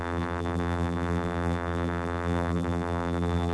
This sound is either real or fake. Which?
fake